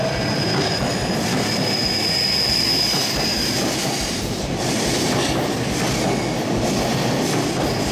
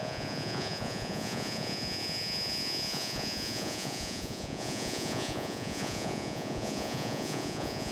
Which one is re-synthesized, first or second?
second